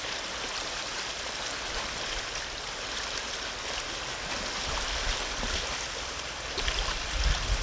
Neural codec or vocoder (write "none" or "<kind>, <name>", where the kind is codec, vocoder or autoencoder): none